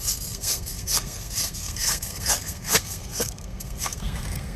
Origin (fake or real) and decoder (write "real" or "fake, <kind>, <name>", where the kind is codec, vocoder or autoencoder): fake, codec, SNAC